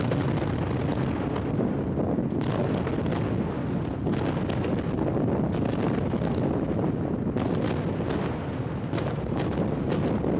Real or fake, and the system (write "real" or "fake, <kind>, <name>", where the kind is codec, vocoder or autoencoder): real